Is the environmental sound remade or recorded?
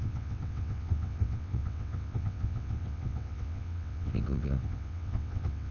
remade